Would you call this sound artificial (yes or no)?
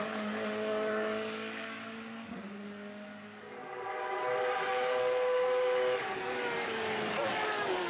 yes